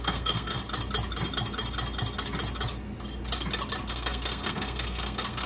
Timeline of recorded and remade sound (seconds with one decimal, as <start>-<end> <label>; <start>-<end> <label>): 0.0-0.6 remade; 0.6-3.9 recorded; 3.9-5.5 remade